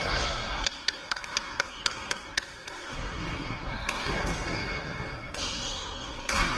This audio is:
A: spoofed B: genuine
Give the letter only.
A